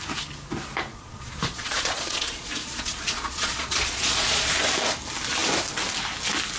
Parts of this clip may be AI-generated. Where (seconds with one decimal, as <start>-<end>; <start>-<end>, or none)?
0.9-4.5